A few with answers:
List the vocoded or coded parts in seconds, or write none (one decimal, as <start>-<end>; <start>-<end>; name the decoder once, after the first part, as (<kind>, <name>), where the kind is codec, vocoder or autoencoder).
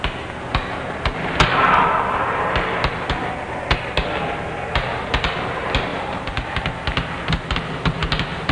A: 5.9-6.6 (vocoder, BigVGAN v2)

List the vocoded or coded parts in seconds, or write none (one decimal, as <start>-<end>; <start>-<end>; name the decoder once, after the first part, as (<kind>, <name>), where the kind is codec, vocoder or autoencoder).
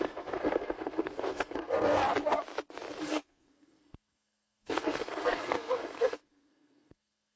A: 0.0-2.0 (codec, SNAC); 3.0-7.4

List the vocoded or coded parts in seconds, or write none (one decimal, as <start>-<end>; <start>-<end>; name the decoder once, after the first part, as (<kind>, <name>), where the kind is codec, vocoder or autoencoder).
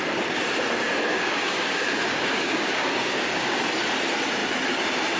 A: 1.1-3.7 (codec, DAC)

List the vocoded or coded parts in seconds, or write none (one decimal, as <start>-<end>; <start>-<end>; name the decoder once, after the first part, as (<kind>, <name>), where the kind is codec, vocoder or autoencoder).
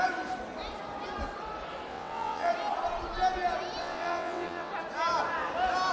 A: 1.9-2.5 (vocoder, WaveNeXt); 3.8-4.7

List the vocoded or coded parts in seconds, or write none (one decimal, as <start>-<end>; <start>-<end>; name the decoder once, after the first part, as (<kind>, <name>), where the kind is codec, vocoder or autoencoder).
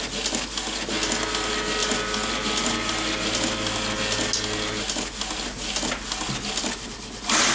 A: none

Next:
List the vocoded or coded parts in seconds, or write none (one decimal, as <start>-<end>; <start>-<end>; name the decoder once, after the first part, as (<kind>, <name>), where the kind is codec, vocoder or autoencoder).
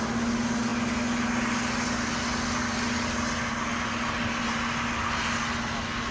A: none